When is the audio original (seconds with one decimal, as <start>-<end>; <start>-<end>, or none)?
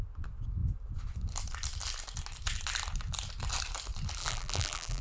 0.0-4.2